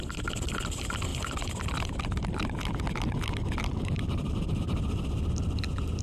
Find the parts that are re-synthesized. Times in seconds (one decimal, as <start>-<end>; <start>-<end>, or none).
none

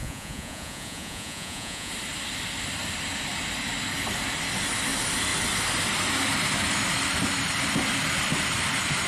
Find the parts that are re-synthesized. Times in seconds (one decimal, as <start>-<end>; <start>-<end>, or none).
0.0-1.9